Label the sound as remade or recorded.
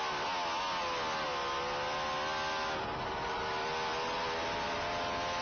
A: recorded